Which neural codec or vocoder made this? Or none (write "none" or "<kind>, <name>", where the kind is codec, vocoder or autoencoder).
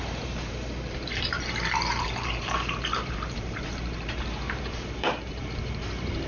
vocoder, BigVGAN v2